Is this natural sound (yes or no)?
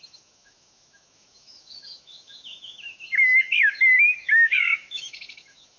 no